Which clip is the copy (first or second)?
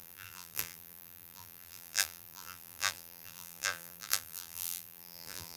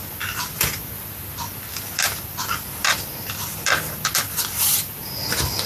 first